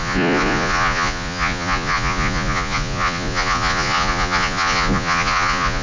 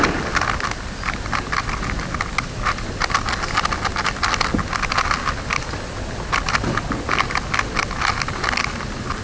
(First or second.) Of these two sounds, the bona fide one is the second